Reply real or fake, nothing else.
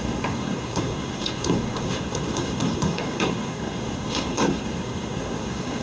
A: fake